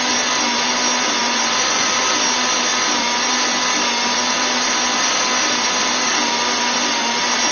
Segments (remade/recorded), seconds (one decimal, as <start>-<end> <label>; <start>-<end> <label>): 0.0-1.2 recorded; 1.2-2.0 remade; 2.0-7.5 recorded

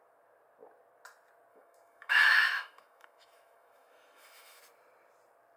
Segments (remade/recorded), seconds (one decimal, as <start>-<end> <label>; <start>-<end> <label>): 0.0-1.5 recorded; 1.5-4.6 remade; 4.6-5.6 recorded

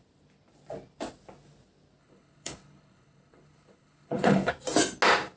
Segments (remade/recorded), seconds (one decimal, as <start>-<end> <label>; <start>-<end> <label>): 0.0-2.0 recorded; 2.0-4.5 remade; 4.5-5.4 recorded

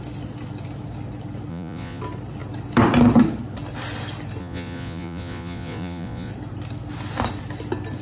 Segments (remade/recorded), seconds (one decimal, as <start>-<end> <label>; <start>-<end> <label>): 0.0-1.5 recorded; 1.5-2.0 remade; 2.0-4.4 recorded; 4.4-6.3 remade; 6.3-8.0 recorded

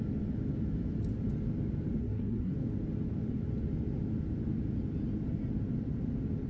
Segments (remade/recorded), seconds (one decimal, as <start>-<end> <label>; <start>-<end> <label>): 0.0-2.0 recorded; 2.0-2.5 remade; 2.5-6.5 recorded

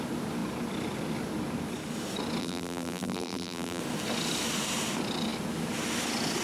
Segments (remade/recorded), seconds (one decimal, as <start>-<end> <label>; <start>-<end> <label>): 0.0-2.4 recorded; 2.4-3.8 remade; 3.8-6.4 recorded

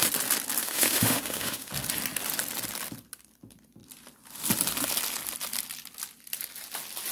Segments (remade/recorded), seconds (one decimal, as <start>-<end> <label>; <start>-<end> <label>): 0.0-0.6 recorded; 0.6-1.7 remade; 1.7-7.1 recorded